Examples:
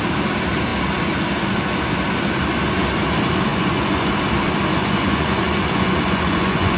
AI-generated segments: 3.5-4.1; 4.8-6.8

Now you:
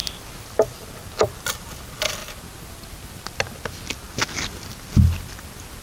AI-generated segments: none

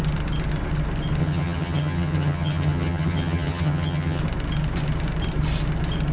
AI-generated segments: 1.2-4.2

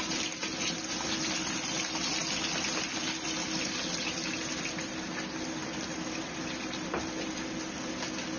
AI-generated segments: none

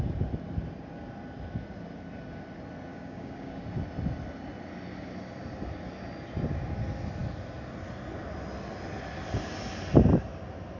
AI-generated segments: 2.9-3.5

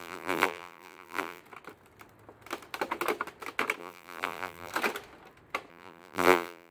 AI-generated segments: 0.0-1.4; 3.8-4.7; 5.7-6.7

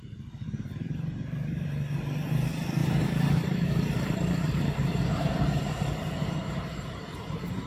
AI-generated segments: 2.8-7.7

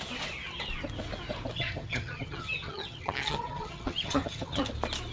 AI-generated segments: 1.5-4.6